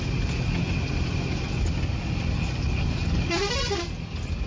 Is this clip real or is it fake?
real